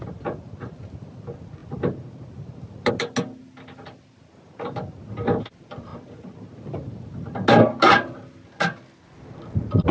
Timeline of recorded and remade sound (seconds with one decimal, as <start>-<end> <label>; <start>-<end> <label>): 0.0-9.9 recorded